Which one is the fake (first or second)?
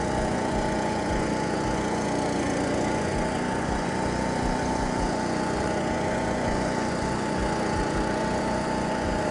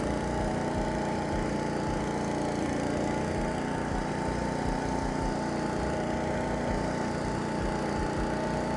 first